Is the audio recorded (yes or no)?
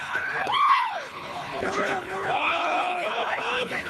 no